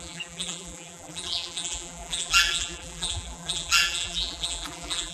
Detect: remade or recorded remade